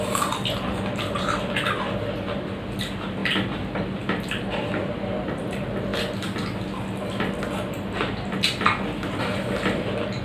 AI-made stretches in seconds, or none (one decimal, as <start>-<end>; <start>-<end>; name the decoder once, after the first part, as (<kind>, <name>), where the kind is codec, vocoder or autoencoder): none